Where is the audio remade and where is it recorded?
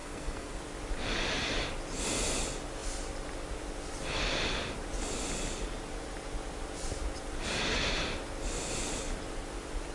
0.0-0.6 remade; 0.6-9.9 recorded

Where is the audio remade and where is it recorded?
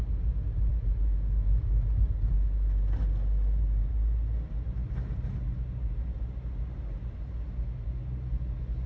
0.0-8.9 recorded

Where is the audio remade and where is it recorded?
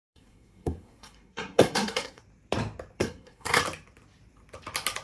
0.0-2.2 remade; 2.2-3.0 recorded; 3.0-3.6 remade; 3.6-5.0 recorded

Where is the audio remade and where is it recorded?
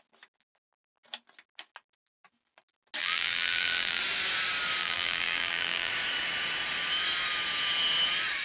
0.0-3.0 recorded; 3.0-4.0 remade; 4.0-4.8 recorded; 4.8-5.9 remade; 5.9-8.4 recorded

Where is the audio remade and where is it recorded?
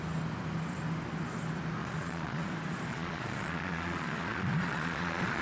0.0-1.8 recorded; 1.8-2.5 remade; 2.5-2.9 recorded; 2.9-5.4 remade